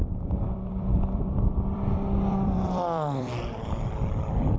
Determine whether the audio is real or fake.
fake